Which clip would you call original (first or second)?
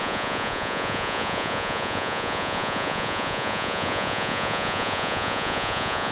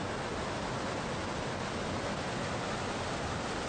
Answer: second